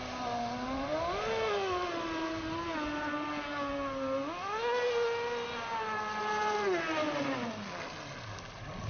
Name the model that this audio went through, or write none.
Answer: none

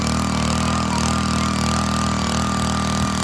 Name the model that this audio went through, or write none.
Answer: none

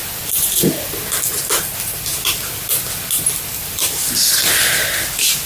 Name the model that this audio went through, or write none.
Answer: none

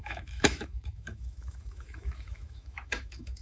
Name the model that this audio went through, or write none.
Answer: autoencoder, DAC-VAE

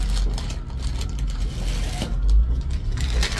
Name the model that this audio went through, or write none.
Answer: none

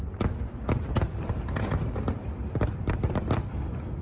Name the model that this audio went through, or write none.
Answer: vocoder, BigVGAN v2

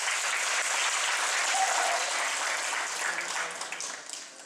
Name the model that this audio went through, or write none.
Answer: none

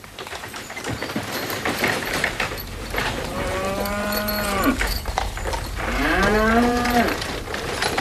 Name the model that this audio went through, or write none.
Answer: vocoder, BigVGAN v2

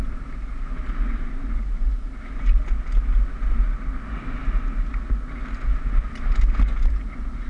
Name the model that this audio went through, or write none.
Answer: none